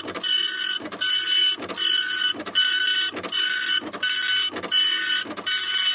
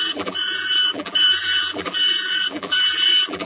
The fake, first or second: second